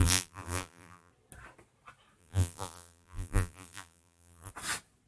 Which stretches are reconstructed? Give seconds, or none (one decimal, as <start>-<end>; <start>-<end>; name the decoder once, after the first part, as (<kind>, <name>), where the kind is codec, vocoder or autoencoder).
0.0-1.1 (vocoder, BigVGAN v2); 2.2-4.5